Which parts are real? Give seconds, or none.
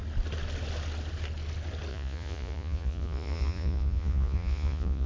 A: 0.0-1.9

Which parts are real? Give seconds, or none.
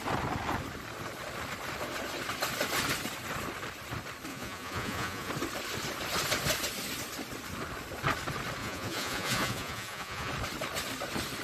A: 0.0-4.3; 5.3-8.6; 10.3-11.4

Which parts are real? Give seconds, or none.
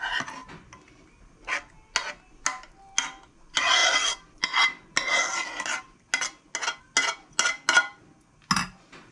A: 0.0-9.1